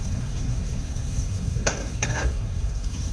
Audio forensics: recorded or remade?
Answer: remade